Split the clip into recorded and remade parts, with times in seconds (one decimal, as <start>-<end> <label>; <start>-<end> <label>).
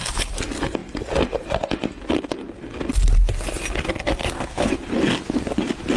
0.0-4.2 recorded; 4.2-4.7 remade; 4.7-6.0 recorded